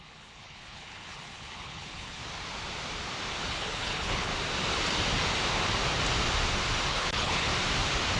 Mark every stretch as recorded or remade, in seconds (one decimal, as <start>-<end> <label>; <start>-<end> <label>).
0.0-2.2 remade; 2.2-3.5 recorded; 3.5-4.3 remade; 4.3-6.9 recorded; 6.9-7.5 remade; 7.5-8.2 recorded

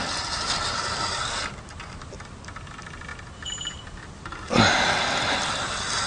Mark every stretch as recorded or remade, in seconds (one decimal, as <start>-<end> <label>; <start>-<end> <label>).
0.0-6.1 recorded

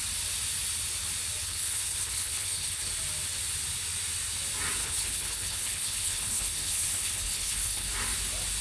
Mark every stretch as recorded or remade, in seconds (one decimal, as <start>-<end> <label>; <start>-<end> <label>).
0.0-1.4 recorded; 1.4-2.9 remade; 2.9-4.8 recorded; 4.8-7.9 remade; 7.9-8.6 recorded

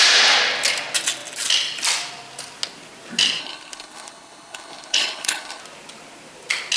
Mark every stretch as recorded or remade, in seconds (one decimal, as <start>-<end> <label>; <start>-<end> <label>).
0.0-3.4 recorded; 3.4-5.6 remade; 5.6-6.8 recorded

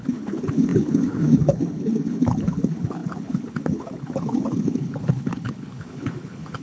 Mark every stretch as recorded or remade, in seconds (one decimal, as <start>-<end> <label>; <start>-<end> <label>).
0.0-6.6 remade

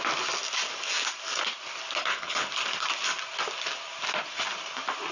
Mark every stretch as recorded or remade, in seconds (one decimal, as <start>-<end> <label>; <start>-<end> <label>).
0.0-2.0 recorded; 2.0-2.5 remade; 2.5-5.1 recorded

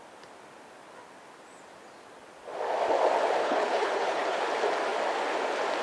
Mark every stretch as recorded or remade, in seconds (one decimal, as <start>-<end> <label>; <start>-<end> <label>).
0.0-3.4 recorded; 3.4-4.4 remade; 4.4-5.8 recorded

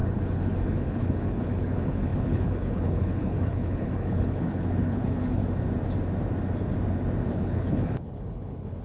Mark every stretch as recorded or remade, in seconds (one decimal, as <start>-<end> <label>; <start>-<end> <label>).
0.0-5.4 remade; 5.4-7.3 recorded; 7.3-8.8 remade